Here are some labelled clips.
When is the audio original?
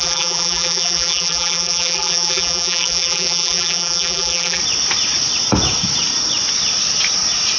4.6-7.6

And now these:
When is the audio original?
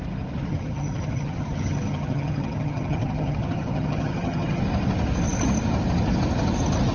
0.0-0.5; 4.6-6.9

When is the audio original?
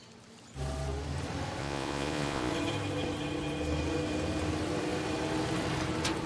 0.0-1.6; 2.5-6.3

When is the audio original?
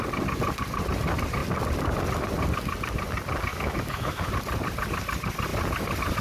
0.0-3.5; 4.3-6.2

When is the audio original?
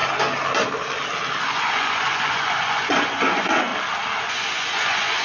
0.0-1.4; 3.7-4.2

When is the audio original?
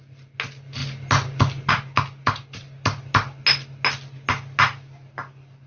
0.0-5.7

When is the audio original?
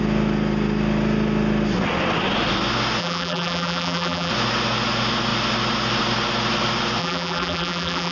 0.0-3.0; 4.3-7.0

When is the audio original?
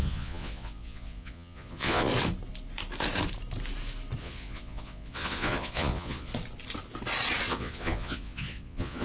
2.1-4.2; 6.3-7.5